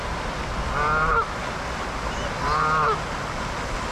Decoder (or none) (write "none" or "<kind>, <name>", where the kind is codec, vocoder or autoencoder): none